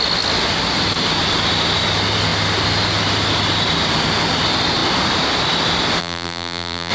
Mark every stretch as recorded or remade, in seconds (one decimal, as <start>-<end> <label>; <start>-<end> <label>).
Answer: 0.0-6.0 recorded; 6.0-6.9 remade